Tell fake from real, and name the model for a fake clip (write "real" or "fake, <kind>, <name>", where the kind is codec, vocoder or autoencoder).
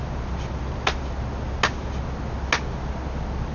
real